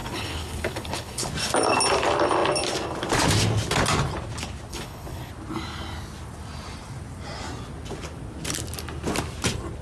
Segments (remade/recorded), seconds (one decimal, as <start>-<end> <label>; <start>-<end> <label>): 0.0-1.3 remade; 1.3-4.7 recorded; 4.7-5.3 remade; 5.3-9.8 recorded